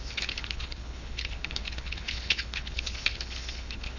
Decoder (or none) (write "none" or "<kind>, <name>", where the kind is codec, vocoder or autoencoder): codec, HILCodec